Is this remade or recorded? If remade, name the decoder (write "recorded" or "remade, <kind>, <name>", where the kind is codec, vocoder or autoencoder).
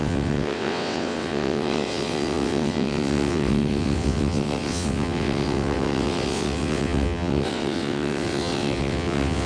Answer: remade, vocoder, WaveNeXt